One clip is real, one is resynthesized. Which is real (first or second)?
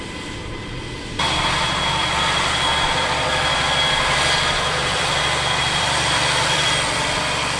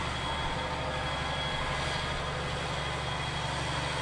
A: second